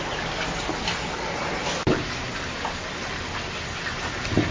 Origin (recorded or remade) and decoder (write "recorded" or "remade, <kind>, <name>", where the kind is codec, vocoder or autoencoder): recorded